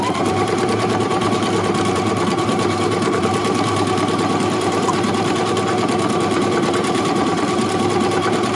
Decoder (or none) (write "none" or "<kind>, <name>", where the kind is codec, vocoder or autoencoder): vocoder, BigVGAN v2